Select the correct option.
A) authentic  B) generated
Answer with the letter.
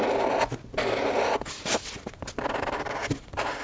A